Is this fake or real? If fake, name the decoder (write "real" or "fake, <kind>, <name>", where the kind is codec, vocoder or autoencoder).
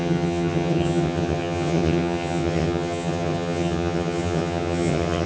fake, vocoder, HiFi-GAN